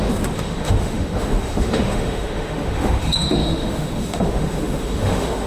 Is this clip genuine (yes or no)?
no